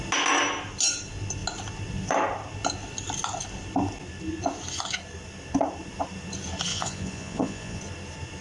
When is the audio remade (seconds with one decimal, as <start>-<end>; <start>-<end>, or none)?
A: 6.7-7.8